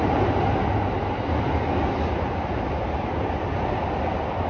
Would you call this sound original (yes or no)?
yes